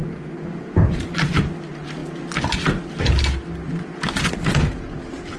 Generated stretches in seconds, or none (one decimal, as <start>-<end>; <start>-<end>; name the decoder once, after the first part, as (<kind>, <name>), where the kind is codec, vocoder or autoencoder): 0.0-2.0 (vocoder, BigVGAN v2)